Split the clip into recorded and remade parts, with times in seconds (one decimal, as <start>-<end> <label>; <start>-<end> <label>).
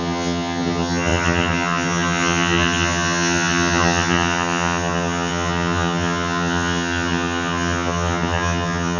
0.0-9.0 remade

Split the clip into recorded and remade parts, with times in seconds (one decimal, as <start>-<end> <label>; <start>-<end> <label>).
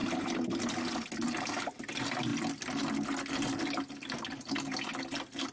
0.0-5.5 recorded